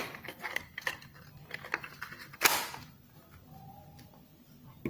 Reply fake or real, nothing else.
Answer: real